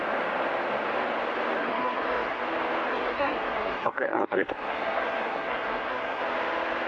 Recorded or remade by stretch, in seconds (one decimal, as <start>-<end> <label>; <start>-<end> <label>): 0.0-1.6 recorded; 1.6-2.4 remade; 2.4-2.9 recorded; 2.9-6.2 remade; 6.2-6.9 recorded